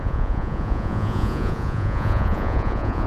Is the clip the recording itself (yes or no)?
no